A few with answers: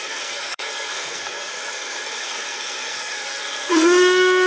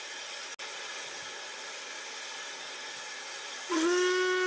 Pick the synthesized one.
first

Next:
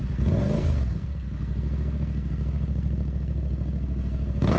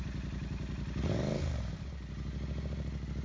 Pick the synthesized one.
first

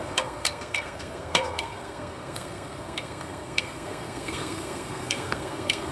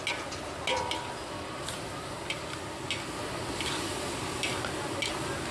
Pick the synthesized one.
first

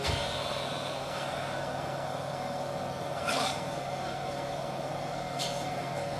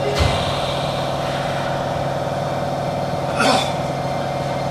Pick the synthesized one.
first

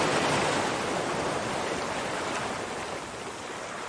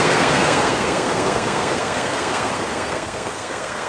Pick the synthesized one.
second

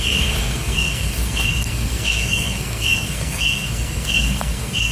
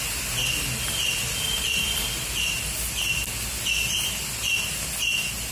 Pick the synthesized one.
first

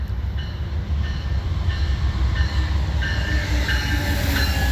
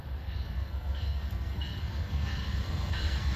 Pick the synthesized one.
second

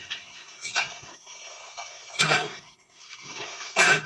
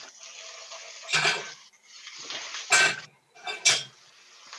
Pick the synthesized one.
first